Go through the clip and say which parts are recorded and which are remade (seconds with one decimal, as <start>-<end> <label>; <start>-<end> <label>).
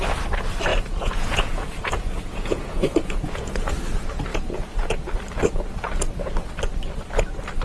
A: 0.0-0.7 recorded; 0.7-3.7 remade; 3.7-4.3 recorded; 4.3-5.1 remade; 5.1-7.6 recorded